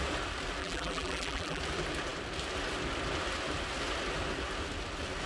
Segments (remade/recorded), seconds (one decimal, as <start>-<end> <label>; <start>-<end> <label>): 0.0-0.6 recorded; 0.6-1.6 remade; 1.6-5.3 recorded